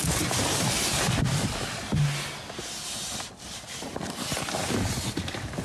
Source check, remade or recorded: recorded